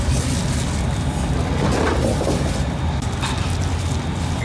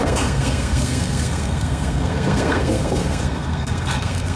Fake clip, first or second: second